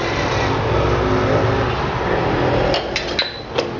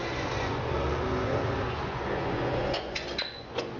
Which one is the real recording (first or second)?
first